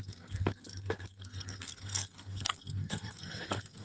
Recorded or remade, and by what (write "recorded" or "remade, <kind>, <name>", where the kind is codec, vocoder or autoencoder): remade, codec, SNAC